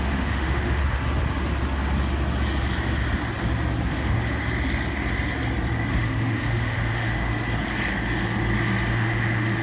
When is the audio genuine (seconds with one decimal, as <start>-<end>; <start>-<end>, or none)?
0.8-3.9; 4.4-5.9; 7.3-8.9